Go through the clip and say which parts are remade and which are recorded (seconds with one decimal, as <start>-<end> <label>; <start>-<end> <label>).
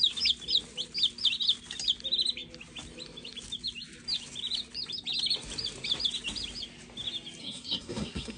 0.0-7.4 recorded; 7.4-8.4 remade